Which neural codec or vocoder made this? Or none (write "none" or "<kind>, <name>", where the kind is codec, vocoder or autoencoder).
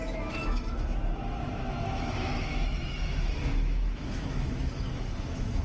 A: autoencoder, DAC-VAE